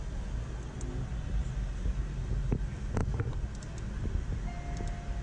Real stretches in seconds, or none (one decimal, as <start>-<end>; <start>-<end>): 0.0-5.2